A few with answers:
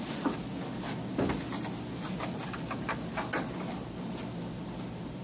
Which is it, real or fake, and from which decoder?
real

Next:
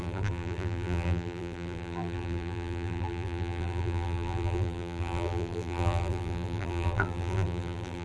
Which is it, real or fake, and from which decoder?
fake, vocoder, BigVGAN v2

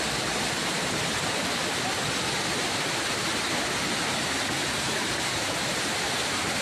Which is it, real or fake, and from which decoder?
real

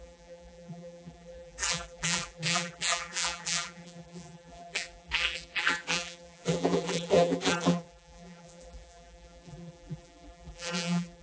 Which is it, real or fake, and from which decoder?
fake, vocoder, BigVGAN v2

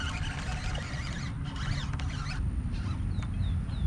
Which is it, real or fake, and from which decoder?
real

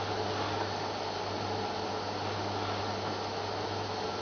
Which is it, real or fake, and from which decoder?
real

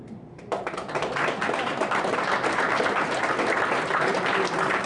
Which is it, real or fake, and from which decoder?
fake, vocoder, BigVGAN v2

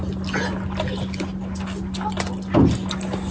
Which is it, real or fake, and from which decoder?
real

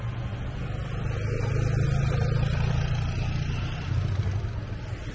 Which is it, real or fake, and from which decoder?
real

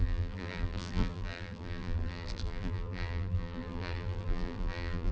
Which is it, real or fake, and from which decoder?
fake, vocoder, BigVGAN v2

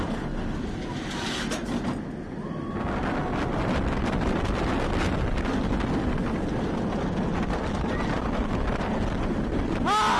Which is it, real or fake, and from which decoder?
real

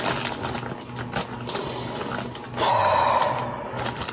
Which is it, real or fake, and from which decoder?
real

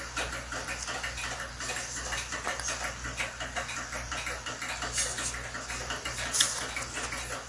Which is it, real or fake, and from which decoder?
real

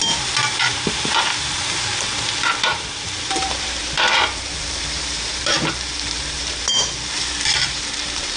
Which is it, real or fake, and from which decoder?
fake, vocoder, BigVGAN v2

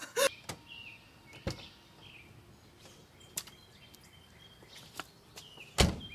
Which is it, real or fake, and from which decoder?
real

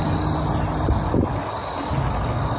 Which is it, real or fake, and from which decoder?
real